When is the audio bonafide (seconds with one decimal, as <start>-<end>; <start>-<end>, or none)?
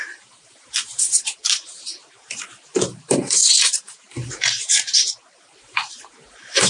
none